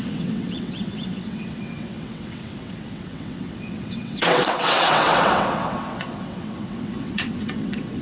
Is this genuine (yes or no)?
no